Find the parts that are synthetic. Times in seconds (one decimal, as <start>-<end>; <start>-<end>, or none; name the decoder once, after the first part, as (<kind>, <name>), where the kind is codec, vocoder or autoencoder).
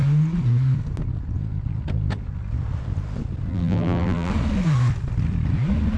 3.5-4.3 (vocoder, BigVGAN v2)